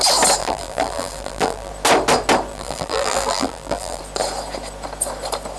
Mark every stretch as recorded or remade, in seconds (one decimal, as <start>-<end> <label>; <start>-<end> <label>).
0.0-0.4 recorded; 0.4-1.7 remade; 1.7-2.5 recorded; 2.5-4.0 remade; 4.0-5.6 recorded